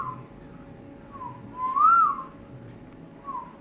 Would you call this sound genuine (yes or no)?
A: yes